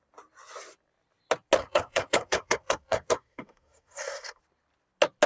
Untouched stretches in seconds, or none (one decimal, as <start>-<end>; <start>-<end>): 0.0-1.6; 4.4-5.3